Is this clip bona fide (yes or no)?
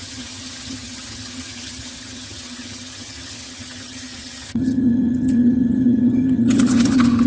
no